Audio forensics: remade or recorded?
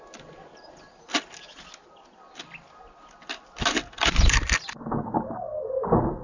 recorded